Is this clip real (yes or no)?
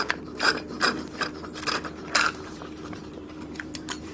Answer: no